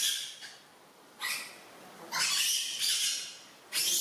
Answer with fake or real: real